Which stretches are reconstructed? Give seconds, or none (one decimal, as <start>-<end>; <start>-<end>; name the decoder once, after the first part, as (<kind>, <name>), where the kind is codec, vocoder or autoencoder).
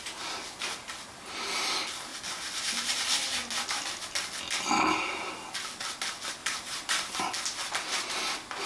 6.4-7.2 (vocoder, BigVGAN v2)